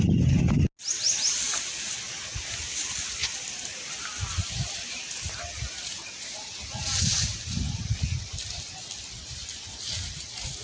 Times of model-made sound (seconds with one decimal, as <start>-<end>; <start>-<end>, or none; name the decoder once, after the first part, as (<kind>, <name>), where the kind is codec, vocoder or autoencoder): none